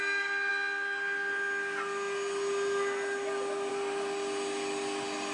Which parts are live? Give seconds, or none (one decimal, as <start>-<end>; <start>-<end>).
0.0-5.3